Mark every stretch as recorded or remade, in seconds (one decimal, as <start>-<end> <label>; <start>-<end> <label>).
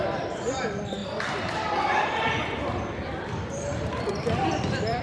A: 0.0-5.0 remade